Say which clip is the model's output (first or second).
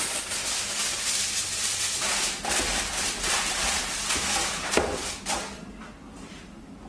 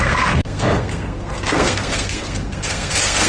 second